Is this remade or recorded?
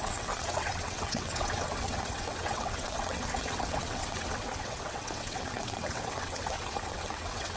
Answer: remade